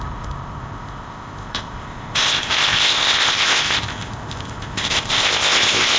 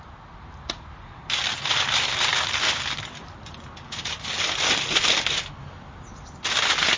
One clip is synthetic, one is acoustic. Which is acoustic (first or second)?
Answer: second